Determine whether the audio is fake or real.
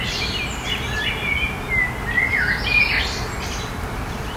real